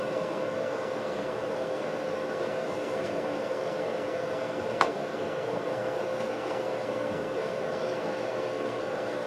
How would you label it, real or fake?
fake